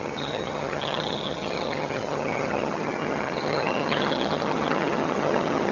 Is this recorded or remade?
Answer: remade